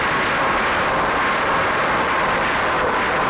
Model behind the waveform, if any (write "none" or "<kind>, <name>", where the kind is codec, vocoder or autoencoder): none